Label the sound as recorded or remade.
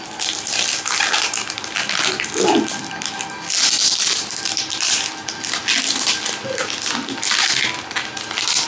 recorded